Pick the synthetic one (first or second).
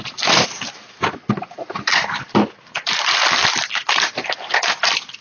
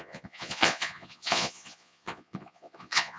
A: second